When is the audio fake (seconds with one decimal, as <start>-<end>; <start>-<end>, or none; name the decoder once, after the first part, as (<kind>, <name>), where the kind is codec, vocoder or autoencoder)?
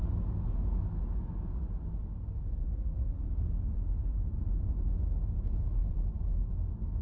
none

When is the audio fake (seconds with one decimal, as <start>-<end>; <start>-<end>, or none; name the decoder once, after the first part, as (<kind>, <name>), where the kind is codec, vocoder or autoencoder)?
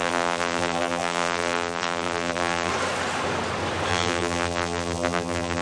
0.0-2.7 (vocoder, BigVGAN v2); 3.9-5.6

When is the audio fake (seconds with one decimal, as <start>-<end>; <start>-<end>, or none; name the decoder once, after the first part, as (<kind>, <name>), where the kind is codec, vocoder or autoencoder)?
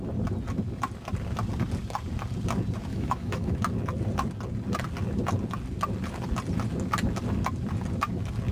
2.9-3.6 (autoencoder, DAC-VAE)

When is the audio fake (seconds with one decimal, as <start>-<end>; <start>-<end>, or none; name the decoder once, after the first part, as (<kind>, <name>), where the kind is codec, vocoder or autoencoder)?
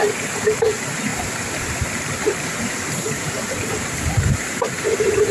0.0-5.3 (vocoder, BigVGAN v2)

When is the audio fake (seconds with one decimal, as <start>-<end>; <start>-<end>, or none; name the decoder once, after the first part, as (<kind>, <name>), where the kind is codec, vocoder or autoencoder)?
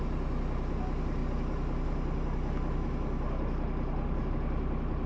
none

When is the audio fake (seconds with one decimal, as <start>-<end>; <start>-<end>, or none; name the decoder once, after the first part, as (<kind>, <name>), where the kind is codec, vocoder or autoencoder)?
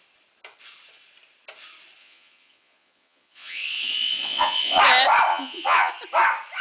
2.0-4.8 (vocoder, Vocos); 5.3-5.9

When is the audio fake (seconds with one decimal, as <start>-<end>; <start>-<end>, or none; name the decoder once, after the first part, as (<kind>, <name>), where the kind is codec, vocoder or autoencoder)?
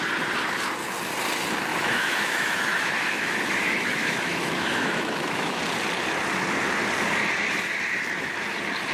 1.7-5.6 (autoencoder, DAC-VAE)